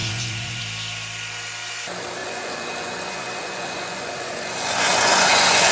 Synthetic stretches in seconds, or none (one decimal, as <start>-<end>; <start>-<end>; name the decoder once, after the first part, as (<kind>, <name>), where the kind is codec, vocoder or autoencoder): 0.0-0.6 (vocoder, Vocos); 2.2-5.7